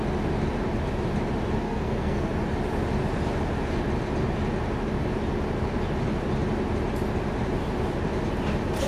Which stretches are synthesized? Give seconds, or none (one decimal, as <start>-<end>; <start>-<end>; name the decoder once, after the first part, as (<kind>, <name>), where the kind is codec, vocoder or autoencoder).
1.6-2.3 (codec, SNAC)

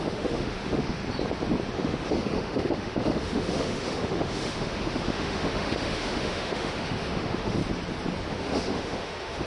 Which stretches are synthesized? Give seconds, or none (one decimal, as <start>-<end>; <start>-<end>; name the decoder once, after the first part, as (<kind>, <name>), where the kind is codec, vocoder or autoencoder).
0.0-1.0 (autoencoder, DAC-VAE); 1.7-7.6; 8.3-9.5

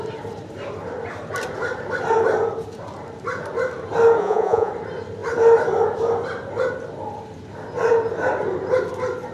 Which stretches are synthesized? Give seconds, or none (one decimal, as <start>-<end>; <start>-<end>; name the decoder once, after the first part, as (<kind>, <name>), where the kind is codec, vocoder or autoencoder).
4.2-4.7 (vocoder, Vocos)